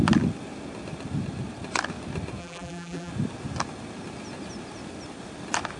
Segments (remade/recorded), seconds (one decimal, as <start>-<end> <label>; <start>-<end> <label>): 0.0-2.4 recorded; 2.4-3.1 remade; 3.1-5.8 recorded